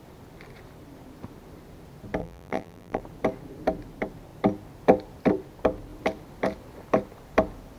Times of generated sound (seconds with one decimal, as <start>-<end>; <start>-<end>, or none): 2.2-3.0